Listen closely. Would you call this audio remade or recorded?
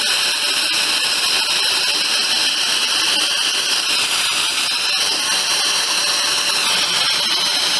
recorded